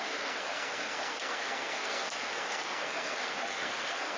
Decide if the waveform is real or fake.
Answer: fake